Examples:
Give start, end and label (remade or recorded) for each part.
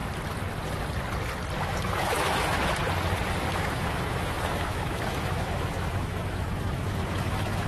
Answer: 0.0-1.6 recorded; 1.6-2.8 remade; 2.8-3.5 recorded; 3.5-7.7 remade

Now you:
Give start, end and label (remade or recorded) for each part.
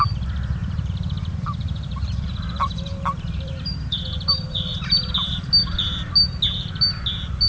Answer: 0.0-0.6 recorded; 0.6-5.1 remade; 5.1-7.5 recorded